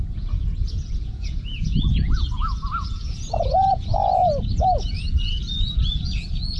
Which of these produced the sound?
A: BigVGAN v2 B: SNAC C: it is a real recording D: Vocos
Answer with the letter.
D